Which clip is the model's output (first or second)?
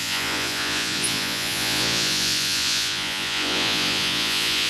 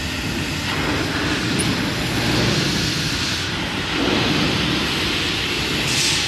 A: first